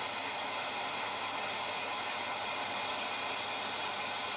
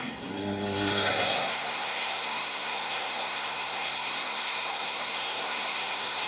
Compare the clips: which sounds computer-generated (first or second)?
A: second